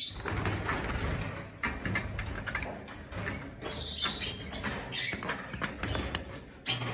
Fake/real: real